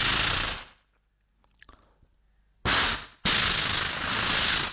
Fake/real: real